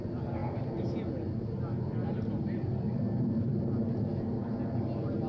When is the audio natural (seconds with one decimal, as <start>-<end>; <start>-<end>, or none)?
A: 0.0-2.0; 2.6-5.3